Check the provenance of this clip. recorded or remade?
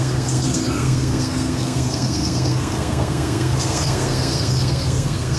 remade